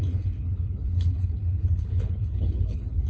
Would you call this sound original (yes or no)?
no